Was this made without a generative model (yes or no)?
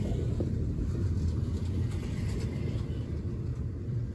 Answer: no